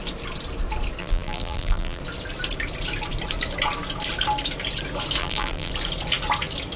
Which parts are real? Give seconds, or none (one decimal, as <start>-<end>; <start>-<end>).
0.0-1.0; 2.0-5.2; 5.7-6.8